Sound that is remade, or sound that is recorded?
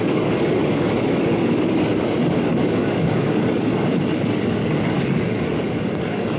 remade